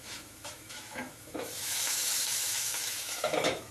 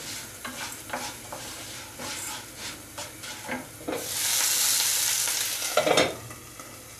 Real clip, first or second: second